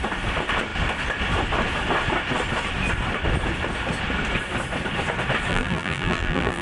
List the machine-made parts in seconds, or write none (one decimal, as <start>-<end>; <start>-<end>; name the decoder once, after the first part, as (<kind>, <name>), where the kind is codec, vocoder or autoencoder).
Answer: 5.5-6.6 (vocoder, BigVGAN v2)